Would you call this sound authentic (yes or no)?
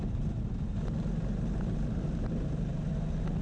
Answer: yes